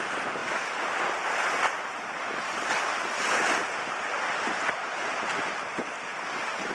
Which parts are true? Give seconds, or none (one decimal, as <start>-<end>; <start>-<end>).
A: 0.4-4.4